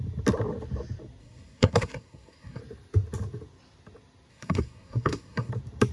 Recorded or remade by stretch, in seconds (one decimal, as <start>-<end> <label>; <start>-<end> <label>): 0.0-1.2 recorded; 1.2-2.6 remade; 2.6-4.3 recorded; 4.3-5.5 remade; 5.5-5.9 recorded

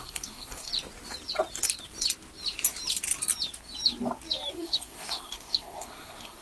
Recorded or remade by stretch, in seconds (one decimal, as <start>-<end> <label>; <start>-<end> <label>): 0.0-0.7 remade; 0.7-4.5 recorded; 4.5-6.4 remade

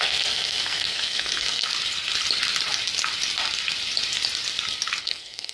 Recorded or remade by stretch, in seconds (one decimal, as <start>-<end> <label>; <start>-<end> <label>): 0.0-1.7 remade; 1.7-5.0 recorded; 5.0-5.5 remade

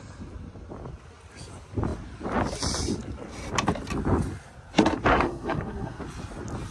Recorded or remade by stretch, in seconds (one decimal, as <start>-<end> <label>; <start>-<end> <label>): 0.0-5.1 recorded; 5.1-6.0 remade; 6.0-6.7 recorded